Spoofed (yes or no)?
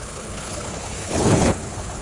yes